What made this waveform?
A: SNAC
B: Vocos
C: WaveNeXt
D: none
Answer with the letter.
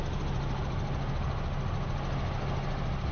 D